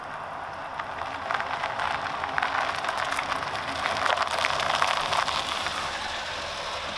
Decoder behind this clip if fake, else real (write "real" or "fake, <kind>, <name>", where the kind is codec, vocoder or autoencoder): real